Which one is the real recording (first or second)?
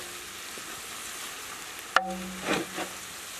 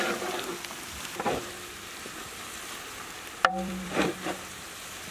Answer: first